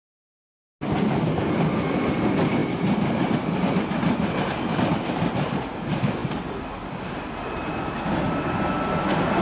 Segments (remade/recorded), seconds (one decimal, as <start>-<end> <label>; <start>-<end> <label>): 0.0-9.4 recorded